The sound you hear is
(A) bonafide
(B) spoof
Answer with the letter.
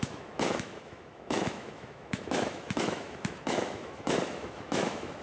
B